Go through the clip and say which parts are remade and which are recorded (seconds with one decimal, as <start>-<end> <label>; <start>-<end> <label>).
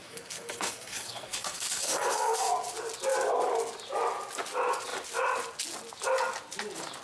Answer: 0.0-2.5 remade; 2.5-7.0 recorded